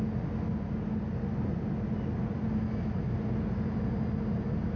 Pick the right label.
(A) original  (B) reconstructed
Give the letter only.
A